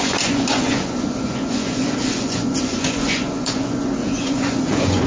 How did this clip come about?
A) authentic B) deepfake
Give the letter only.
B